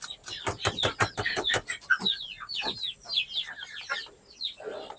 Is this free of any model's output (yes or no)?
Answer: yes